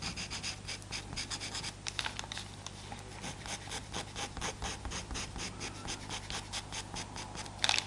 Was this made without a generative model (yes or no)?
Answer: yes